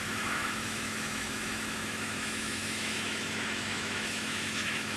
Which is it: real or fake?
fake